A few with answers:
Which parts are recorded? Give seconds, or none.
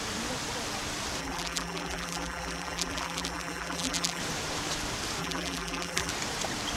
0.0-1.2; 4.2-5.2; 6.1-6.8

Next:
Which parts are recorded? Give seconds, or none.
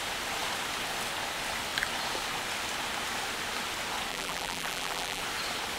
0.0-4.1; 5.2-5.8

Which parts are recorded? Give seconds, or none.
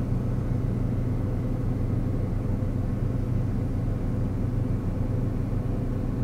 0.0-6.2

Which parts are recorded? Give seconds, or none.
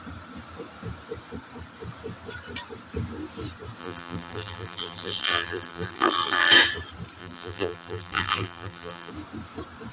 0.0-3.8; 6.5-7.2; 9.1-9.9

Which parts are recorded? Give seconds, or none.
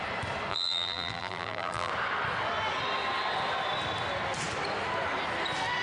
0.0-0.5; 1.9-5.8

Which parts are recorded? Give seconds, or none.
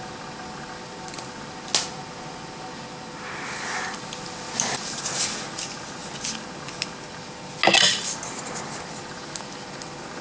0.0-10.2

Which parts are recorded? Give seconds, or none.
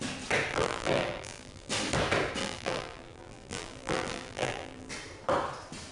0.0-0.5; 1.7-2.4; 4.9-5.9